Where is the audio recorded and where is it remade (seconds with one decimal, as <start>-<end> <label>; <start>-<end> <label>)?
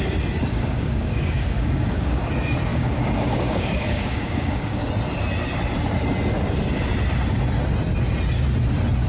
0.0-0.5 recorded; 0.5-2.3 remade; 2.3-2.7 recorded; 2.7-4.9 remade; 4.9-9.1 recorded